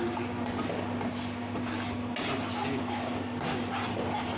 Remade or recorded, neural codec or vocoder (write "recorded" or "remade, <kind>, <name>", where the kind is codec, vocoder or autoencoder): recorded